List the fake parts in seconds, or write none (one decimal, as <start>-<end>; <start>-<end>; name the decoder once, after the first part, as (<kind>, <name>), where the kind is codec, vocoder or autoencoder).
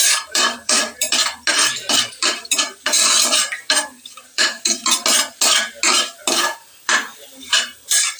0.0-1.2 (vocoder, BigVGAN v2); 2.0-4.8; 6.3-8.2